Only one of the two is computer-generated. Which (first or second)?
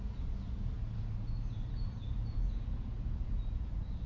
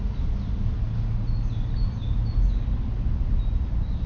first